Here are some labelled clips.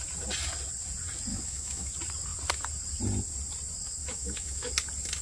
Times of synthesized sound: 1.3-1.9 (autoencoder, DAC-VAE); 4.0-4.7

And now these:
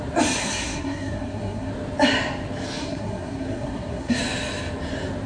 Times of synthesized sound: 0.4-1.7 (codec, SNAC); 2.8-4.2

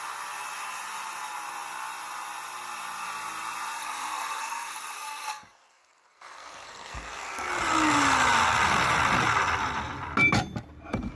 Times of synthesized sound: 3.8-7.5 (codec, SNAC)

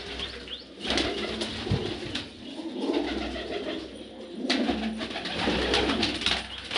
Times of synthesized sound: none

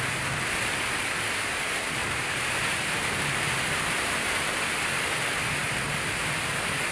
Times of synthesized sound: 2.0-4.5 (vocoder, BigVGAN v2)